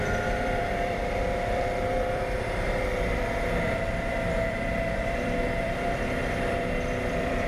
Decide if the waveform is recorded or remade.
remade